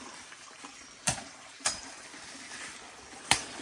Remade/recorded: remade